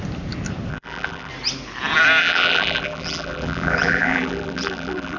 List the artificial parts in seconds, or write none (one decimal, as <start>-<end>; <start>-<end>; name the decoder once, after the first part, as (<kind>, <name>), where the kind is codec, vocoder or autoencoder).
0.7-1.3 (vocoder, BigVGAN v2); 2.2-5.2